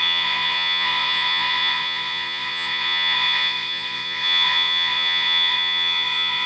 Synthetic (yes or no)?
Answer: yes